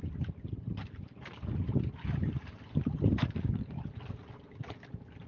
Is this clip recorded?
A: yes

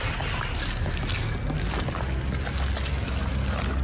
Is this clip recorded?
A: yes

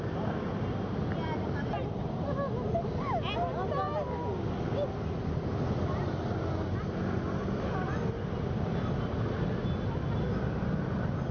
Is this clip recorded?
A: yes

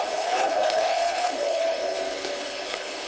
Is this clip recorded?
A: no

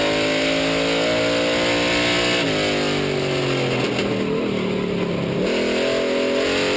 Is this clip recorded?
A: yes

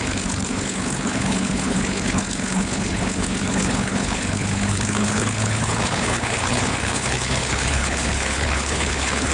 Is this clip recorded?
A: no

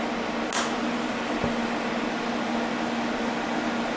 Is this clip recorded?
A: yes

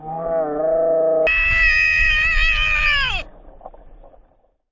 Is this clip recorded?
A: yes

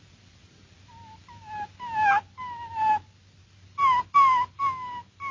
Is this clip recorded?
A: yes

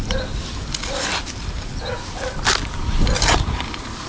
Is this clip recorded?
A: yes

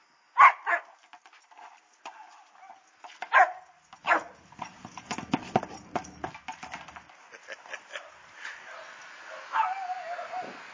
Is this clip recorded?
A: yes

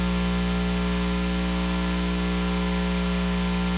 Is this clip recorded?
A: yes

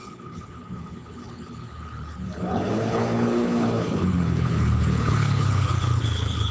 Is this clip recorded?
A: no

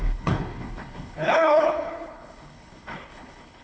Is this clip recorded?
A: no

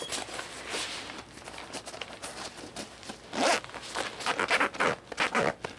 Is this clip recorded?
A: yes